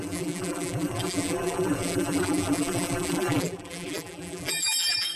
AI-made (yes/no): yes